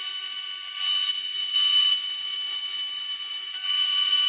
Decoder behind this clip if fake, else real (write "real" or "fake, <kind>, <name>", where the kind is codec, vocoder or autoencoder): fake, vocoder, Vocos